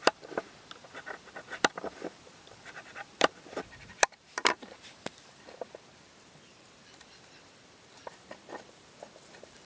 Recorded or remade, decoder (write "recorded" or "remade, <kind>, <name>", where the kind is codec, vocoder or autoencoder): remade, vocoder, BigVGAN v2